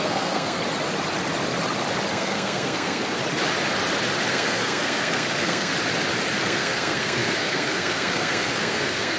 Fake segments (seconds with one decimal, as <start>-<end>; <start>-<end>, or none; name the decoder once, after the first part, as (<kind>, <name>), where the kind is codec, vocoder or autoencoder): 0.0-0.6 (codec, SNAC); 2.1-3.2; 4.3-5.7; 6.4-9.2